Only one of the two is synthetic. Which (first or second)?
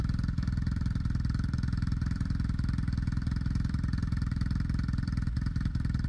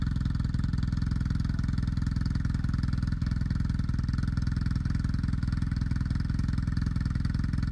first